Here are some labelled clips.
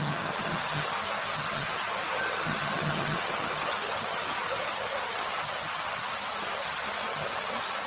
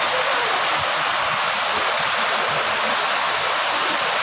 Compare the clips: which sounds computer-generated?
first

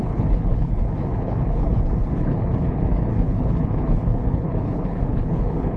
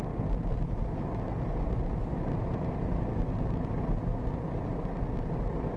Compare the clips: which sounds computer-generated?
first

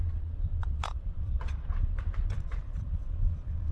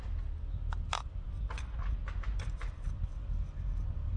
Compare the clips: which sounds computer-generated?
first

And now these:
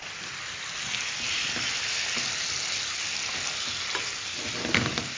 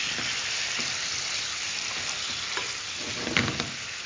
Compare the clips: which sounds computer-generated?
second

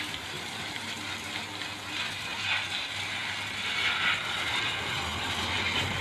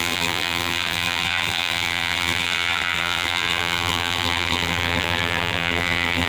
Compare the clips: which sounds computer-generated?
second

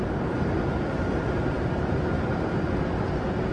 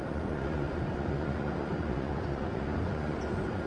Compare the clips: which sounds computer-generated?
second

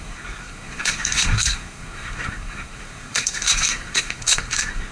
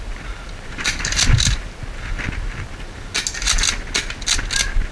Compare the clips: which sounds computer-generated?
first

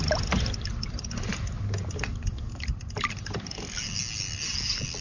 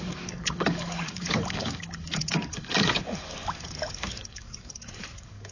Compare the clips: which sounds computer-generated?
second